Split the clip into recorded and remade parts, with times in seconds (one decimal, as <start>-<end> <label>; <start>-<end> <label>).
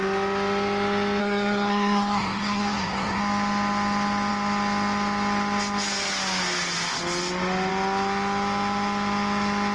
0.0-1.2 recorded; 1.2-3.2 remade; 3.2-9.7 recorded